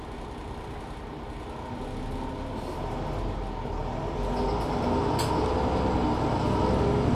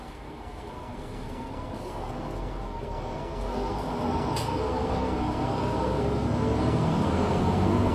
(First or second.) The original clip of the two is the first